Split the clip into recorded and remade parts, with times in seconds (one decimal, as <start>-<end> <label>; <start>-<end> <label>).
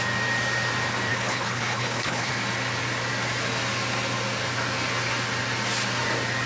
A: 0.0-1.1 recorded; 1.1-2.3 remade; 2.3-6.5 recorded